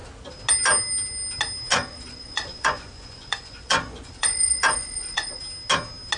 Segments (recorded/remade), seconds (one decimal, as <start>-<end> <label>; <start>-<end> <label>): 0.0-1.7 recorded; 1.7-5.4 remade; 5.4-6.2 recorded